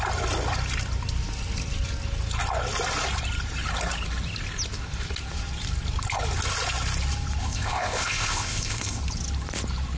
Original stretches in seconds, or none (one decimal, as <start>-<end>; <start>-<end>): 0.0-7.4; 9.0-10.0